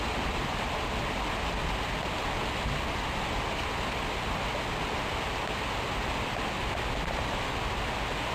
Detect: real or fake real